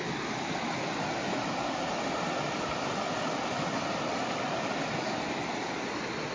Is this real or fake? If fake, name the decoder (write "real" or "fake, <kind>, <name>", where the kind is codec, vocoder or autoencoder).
real